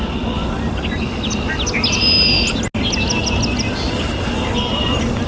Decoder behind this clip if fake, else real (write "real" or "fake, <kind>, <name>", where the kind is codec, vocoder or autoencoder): real